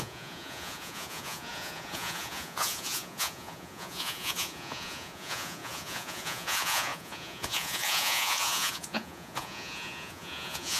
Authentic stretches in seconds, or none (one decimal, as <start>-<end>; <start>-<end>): none